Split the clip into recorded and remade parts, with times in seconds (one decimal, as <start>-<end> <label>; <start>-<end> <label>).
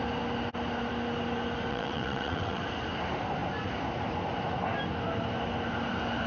0.0-1.7 recorded; 1.7-2.6 remade; 2.6-6.3 recorded